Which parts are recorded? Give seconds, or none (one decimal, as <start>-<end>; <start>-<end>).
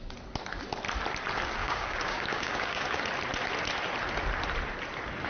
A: 0.0-1.6; 3.1-5.3